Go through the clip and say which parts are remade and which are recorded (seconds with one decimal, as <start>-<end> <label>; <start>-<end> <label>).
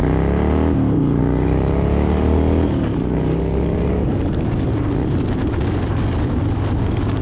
0.0-1.2 recorded; 1.2-4.7 remade; 4.7-5.5 recorded; 5.5-7.2 remade